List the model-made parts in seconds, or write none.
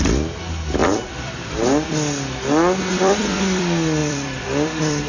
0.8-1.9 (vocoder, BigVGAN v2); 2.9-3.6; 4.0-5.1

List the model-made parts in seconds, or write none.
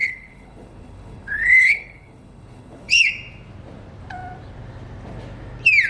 0.0-3.1 (codec, HILCodec)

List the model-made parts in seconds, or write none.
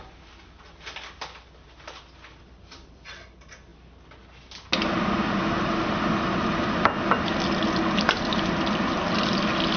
none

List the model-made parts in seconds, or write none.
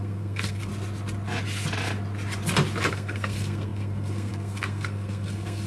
0.0-0.7 (codec, SNAC); 2.9-5.7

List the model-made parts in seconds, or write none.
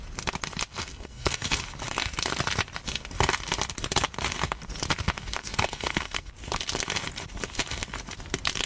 0.9-1.6 (codec, SNAC); 5.4-6.3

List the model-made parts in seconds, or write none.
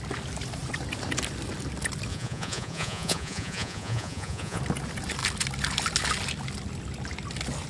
2.1-4.6 (vocoder, Vocos)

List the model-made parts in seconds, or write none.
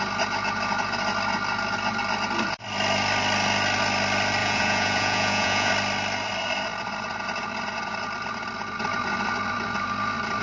4.4-5.7 (vocoder, Vocos)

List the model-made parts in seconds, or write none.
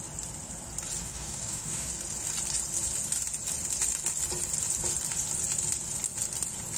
1.0-1.9 (codec, DAC)